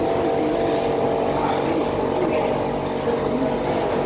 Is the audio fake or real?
real